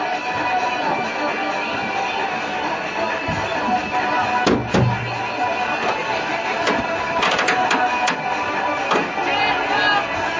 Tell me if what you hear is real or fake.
real